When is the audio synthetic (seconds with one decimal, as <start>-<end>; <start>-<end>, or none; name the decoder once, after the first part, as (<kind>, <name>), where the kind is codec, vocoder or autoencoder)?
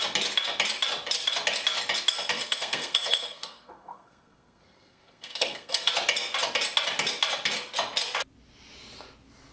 2.3-5.9 (codec, SNAC)